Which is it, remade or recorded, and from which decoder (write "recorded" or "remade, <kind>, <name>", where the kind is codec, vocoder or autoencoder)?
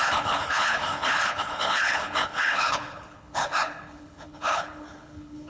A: remade, codec, HILCodec